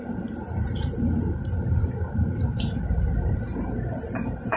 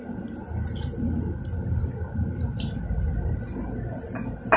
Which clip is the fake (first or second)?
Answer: first